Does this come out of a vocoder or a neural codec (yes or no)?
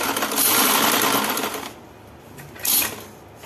no